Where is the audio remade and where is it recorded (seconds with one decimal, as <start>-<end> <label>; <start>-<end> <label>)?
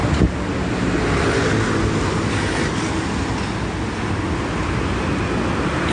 0.0-5.9 recorded